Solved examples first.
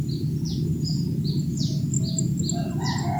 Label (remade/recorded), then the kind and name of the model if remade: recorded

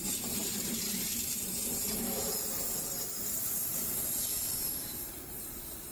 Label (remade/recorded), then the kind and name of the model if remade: remade, vocoder, BigVGAN v2